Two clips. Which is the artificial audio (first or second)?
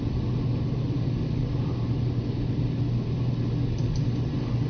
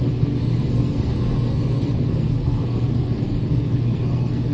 second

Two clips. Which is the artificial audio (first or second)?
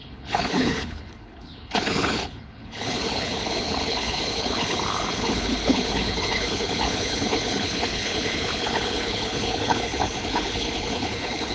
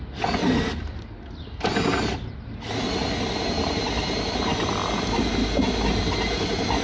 first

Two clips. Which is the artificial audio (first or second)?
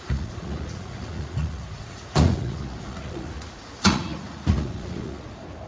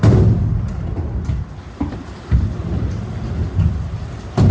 first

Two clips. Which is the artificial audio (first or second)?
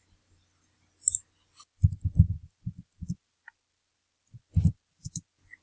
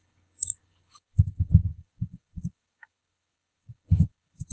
second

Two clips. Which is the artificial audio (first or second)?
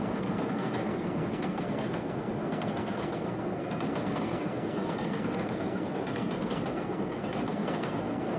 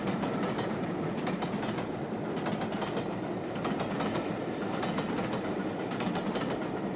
first